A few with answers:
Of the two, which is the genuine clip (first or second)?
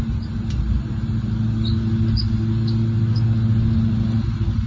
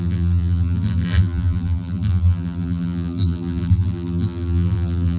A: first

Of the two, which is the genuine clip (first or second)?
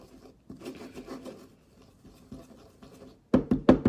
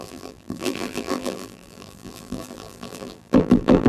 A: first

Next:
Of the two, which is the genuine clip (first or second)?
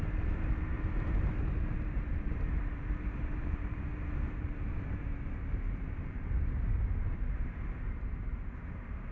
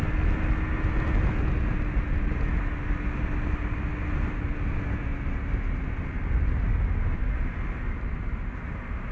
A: second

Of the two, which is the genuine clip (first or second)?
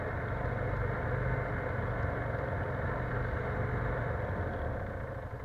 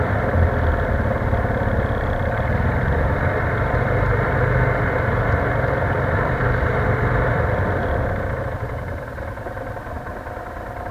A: first